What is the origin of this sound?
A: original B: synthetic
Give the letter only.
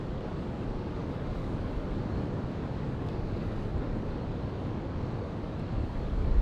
B